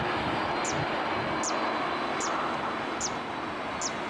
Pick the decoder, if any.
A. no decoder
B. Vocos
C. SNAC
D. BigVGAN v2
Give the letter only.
A